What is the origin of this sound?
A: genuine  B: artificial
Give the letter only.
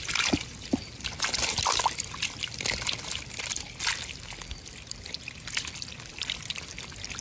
A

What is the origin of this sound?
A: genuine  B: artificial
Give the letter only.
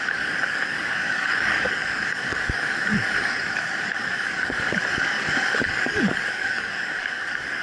B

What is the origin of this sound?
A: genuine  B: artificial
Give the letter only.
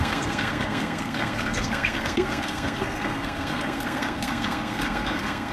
B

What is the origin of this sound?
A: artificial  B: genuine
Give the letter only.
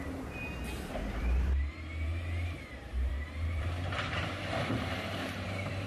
A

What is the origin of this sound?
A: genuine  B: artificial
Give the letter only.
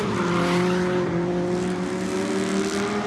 A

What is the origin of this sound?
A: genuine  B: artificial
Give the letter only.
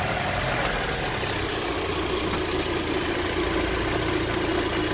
A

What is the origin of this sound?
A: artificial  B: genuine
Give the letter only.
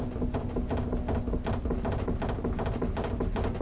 B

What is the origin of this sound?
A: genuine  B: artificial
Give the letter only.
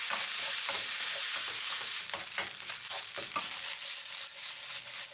A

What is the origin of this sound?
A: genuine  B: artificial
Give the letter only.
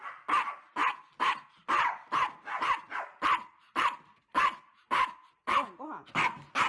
A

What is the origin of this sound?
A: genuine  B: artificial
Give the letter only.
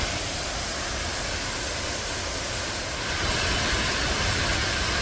A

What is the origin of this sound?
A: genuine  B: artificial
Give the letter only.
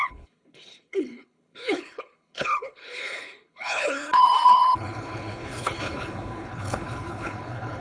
B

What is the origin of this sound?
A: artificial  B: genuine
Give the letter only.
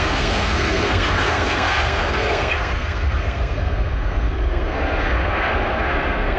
A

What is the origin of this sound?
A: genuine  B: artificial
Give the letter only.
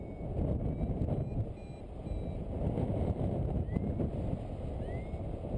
A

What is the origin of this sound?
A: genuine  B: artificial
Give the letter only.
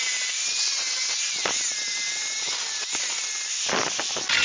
A